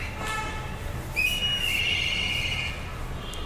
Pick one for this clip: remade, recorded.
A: recorded